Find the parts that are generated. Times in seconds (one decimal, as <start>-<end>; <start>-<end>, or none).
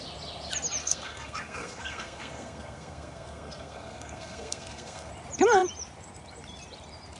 0.8-5.1